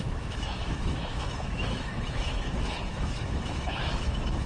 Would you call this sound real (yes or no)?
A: no